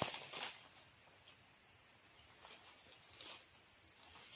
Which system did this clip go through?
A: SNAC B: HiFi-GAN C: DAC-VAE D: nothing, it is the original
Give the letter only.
D